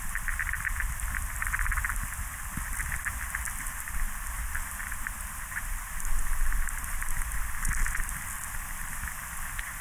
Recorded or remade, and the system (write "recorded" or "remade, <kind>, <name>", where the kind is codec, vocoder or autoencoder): recorded